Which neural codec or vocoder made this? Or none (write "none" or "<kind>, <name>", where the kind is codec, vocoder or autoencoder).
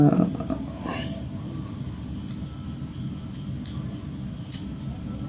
none